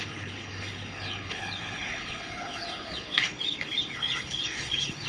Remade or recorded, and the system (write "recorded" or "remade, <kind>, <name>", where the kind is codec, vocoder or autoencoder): remade, codec, HILCodec